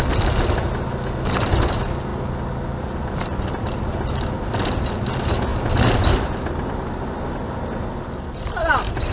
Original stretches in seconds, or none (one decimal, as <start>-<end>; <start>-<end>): 0.0-2.1; 5.1-5.5; 6.8-9.1